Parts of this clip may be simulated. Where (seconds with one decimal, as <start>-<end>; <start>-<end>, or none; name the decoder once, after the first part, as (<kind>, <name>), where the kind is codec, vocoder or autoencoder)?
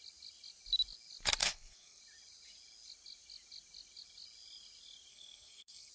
1.4-2.0 (codec, SNAC); 5.1-5.9